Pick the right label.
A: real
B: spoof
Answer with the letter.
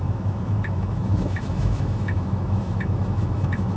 B